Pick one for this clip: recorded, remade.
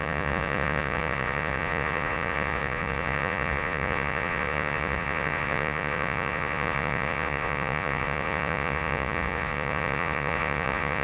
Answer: remade